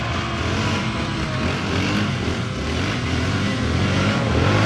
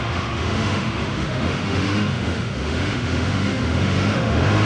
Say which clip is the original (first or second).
first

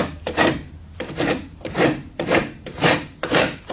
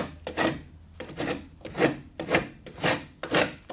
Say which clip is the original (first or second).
second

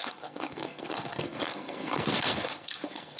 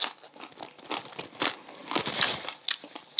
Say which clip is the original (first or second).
second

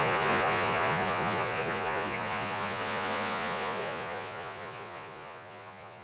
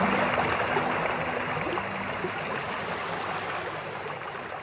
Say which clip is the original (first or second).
second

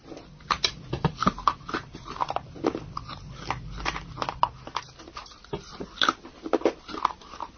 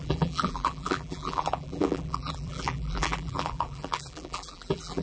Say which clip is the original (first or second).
first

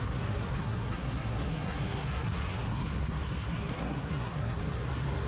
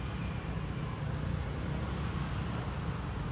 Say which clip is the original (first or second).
second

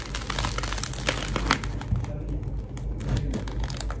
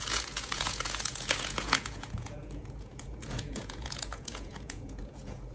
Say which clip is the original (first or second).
first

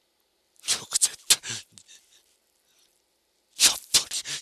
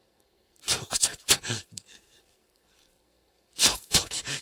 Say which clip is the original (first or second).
first